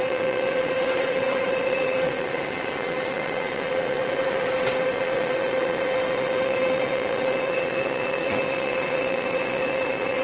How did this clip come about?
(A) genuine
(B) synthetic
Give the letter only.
B